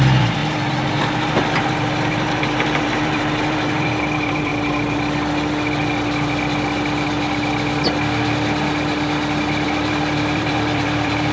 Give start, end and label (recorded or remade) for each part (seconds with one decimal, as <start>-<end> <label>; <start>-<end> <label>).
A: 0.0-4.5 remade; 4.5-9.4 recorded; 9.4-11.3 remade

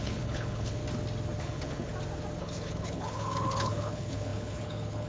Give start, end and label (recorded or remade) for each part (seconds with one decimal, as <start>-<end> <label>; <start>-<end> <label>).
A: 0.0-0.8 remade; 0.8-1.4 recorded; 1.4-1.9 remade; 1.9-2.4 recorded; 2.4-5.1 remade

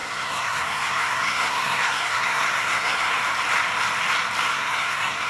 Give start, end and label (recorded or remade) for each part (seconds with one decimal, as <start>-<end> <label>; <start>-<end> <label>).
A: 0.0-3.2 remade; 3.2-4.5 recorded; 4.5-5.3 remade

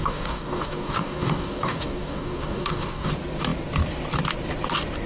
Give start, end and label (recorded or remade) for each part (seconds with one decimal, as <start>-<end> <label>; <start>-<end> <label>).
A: 0.0-3.1 remade; 3.1-5.1 recorded

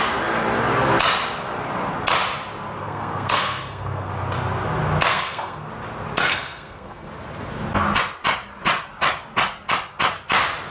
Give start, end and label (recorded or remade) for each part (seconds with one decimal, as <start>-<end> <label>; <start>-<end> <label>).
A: 0.0-2.8 recorded; 2.8-4.1 remade; 4.1-5.1 recorded; 5.1-5.7 remade; 5.7-6.3 recorded; 6.3-7.1 remade; 7.1-10.7 recorded